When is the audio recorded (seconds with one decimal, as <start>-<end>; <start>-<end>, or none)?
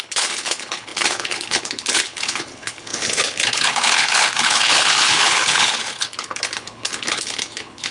none